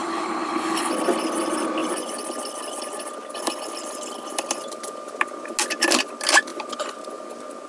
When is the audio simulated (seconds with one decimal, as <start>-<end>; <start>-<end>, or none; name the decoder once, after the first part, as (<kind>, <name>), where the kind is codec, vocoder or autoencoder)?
0.0-0.9 (codec, HILCodec)